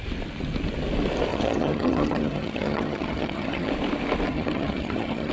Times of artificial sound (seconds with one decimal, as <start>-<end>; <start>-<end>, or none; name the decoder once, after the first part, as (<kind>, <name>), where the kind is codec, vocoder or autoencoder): 1.3-3.7 (vocoder, HiFi-GAN); 4.3-5.3